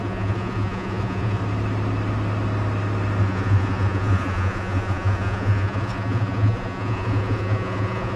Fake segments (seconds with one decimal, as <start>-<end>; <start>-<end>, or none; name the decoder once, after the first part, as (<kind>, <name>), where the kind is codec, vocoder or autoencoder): 0.0-1.4 (vocoder, Vocos); 3.2-8.2